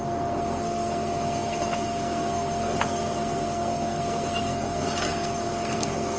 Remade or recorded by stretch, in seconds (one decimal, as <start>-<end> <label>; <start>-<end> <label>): 0.0-6.2 remade

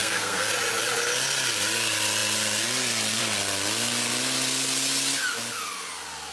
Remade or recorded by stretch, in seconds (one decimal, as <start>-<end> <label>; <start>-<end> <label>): 0.0-0.5 remade; 0.5-6.3 recorded

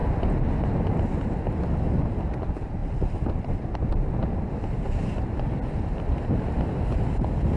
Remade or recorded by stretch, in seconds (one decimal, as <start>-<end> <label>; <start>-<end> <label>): 0.0-7.6 recorded

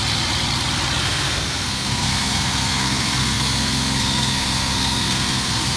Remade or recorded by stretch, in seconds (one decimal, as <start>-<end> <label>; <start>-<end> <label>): 0.0-1.0 recorded; 1.0-5.8 remade

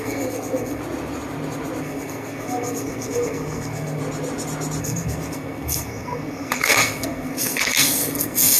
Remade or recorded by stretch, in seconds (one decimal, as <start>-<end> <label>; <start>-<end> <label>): 0.0-0.8 remade; 0.8-1.8 recorded; 1.8-4.0 remade; 4.0-4.8 recorded; 4.8-8.6 remade

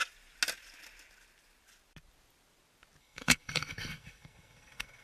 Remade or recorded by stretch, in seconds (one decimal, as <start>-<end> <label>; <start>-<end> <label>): 0.0-3.0 recorded; 3.0-5.0 remade

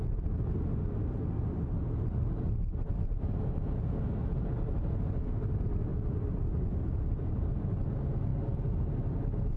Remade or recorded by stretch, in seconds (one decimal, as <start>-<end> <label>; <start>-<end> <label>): 0.0-9.6 recorded

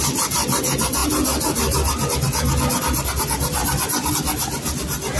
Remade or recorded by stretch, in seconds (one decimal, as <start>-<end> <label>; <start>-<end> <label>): 0.0-5.2 recorded